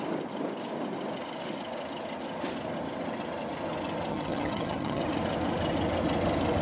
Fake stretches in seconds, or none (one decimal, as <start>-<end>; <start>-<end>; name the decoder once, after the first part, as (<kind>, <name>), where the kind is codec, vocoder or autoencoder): 4.1-5.0 (vocoder, HiFi-GAN)